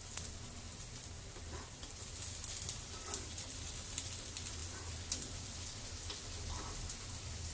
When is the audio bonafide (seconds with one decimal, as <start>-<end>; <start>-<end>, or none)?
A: 0.0-7.5